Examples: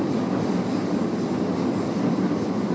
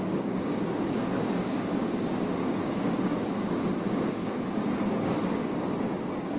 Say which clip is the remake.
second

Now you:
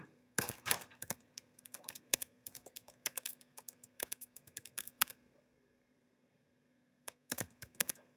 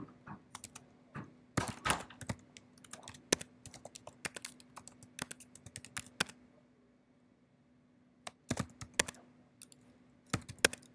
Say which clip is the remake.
first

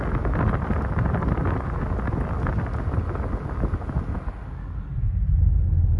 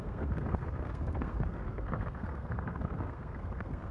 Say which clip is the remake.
second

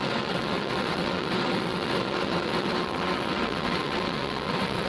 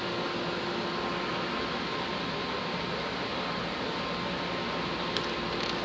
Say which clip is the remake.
first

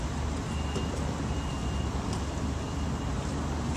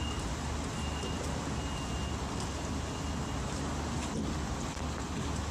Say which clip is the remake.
first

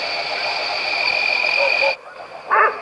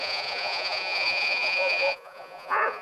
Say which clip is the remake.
second